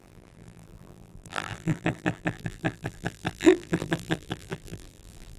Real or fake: fake